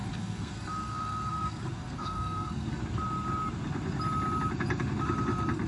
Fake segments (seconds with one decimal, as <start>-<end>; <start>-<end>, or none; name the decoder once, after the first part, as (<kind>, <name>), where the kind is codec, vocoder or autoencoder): 0.0-2.8 (codec, SNAC)